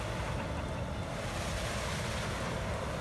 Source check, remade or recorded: recorded